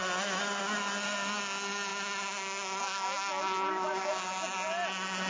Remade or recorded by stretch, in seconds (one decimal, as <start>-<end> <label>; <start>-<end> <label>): 0.0-5.3 recorded

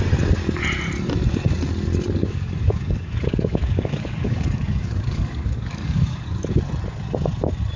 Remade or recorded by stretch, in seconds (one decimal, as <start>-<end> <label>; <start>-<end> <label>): 0.0-2.2 recorded; 2.2-6.6 remade; 6.6-7.8 recorded